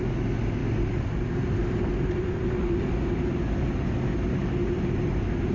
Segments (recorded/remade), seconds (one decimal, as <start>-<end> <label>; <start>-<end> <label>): 0.0-5.5 recorded